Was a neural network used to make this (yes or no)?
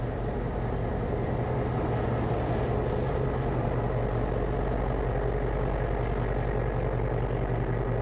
no